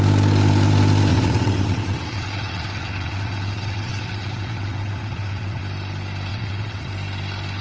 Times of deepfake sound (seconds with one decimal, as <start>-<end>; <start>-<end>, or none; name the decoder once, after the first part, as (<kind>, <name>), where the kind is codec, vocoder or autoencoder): 1.1-5.6 (vocoder, WaveNeXt); 6.3-6.9